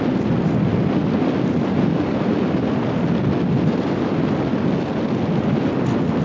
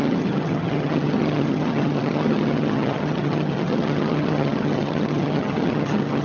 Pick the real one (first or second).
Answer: first